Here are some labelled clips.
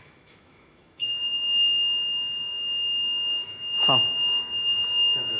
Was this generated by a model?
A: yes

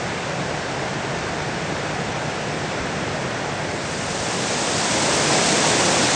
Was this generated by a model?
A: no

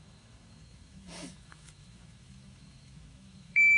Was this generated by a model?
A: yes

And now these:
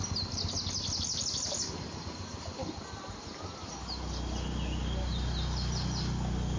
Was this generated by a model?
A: no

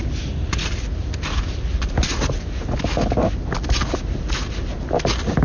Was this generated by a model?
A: no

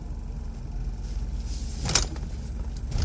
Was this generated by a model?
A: no